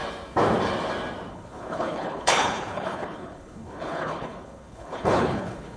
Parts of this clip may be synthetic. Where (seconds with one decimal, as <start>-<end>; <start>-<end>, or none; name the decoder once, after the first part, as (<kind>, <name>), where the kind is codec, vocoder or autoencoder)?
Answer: 1.3-5.8 (codec, HILCodec)